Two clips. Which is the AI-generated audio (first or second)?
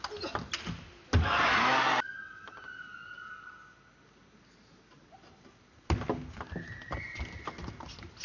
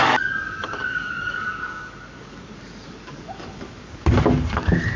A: second